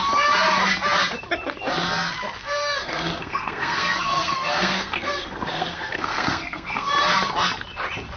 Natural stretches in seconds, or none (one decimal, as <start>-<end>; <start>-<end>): 0.0-2.4; 6.9-8.2